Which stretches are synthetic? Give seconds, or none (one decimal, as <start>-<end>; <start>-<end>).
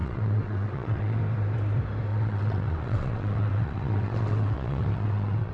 0.0-1.2; 2.1-5.5